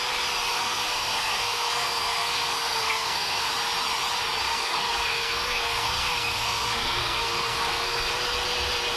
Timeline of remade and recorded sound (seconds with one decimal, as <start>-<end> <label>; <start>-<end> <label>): 0.0-0.5 recorded; 0.5-3.5 remade; 3.5-4.4 recorded; 4.4-8.1 remade; 8.1-9.0 recorded